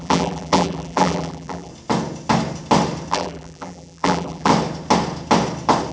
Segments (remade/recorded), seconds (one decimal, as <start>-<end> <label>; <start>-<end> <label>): 0.0-1.7 remade; 1.7-3.1 recorded; 3.1-4.5 remade; 4.5-5.9 recorded